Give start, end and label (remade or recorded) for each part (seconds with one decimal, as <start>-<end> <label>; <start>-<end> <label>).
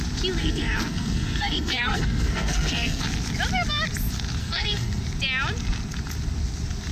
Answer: 0.0-0.4 recorded; 0.4-3.0 remade; 3.0-4.4 recorded; 4.4-5.0 remade; 5.0-6.9 recorded